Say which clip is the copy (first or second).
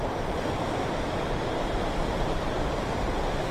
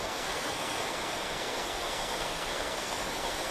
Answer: second